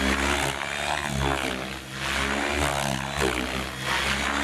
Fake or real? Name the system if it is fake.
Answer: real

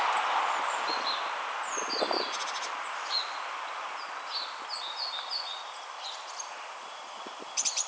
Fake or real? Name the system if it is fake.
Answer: real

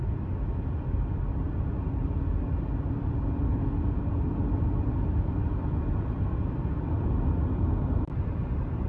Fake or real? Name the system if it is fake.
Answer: real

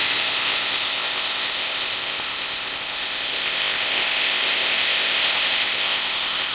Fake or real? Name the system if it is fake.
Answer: fake, codec, ZipCodec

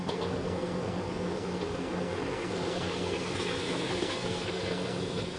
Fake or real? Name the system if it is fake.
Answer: fake, codec, SNAC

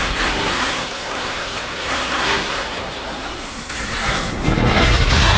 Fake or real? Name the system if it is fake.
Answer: fake, codec, SNAC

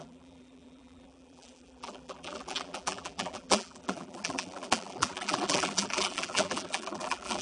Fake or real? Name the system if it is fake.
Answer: fake, vocoder, BigVGAN v2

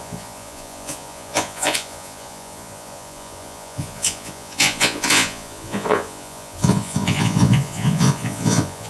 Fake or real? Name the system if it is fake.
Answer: fake, vocoder, Vocos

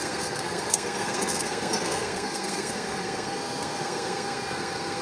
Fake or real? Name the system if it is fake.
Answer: fake, codec, SNAC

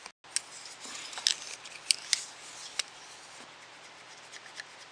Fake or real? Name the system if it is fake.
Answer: real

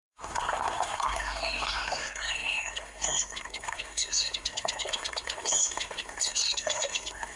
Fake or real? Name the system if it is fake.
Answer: fake, codec, SNAC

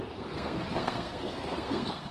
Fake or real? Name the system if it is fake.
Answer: fake, codec, SNAC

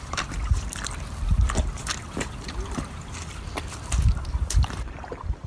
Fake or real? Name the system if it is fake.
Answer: fake, vocoder, BigVGAN v2